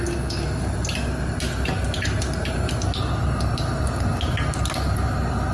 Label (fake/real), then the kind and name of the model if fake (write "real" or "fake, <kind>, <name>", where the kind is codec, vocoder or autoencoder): real